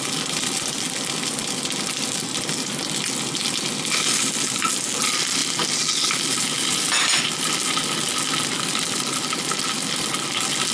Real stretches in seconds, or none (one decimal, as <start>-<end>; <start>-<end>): 0.0-10.7